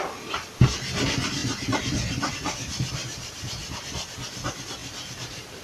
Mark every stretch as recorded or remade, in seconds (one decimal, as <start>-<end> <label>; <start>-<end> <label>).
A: 0.0-1.4 recorded; 1.4-2.3 remade; 2.3-3.0 recorded; 3.0-3.9 remade; 3.9-4.8 recorded; 4.8-5.6 remade